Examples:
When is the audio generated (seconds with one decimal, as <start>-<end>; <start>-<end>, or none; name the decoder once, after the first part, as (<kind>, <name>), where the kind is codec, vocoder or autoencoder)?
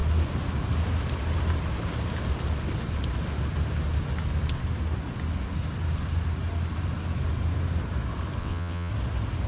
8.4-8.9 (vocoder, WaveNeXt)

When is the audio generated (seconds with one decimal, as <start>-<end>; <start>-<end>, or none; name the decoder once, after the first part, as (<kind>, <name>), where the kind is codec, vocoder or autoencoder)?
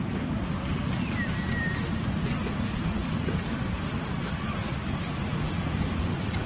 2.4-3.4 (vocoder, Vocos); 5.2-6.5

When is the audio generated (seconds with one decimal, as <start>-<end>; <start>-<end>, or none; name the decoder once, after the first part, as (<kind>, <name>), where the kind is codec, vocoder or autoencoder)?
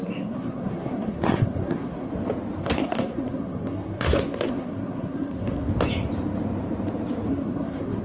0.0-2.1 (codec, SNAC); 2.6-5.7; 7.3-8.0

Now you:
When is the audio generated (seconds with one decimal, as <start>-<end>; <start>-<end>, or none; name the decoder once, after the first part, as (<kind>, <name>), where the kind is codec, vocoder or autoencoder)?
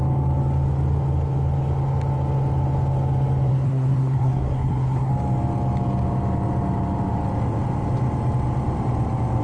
3.5-5.1 (codec, SNAC)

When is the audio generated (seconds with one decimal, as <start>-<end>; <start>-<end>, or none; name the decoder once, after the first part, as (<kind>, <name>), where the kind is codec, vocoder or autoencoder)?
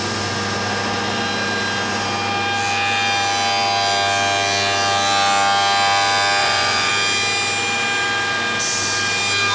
6.4-6.9 (vocoder, Vocos)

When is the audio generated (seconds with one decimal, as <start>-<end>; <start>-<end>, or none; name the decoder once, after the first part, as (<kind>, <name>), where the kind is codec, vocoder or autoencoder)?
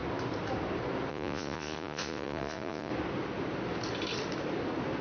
1.1-2.9 (vocoder, Vocos)